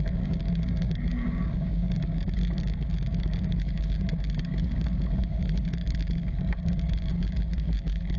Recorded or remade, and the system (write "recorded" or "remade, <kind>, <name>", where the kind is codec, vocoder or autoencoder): remade, codec, DAC